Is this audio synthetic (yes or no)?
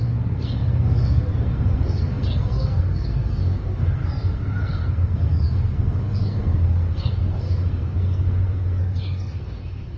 yes